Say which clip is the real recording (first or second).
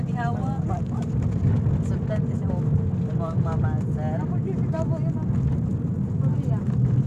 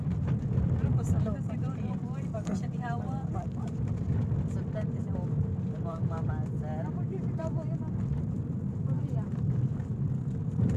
first